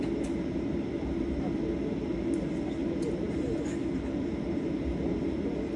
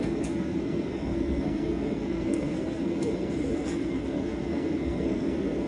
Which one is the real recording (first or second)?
first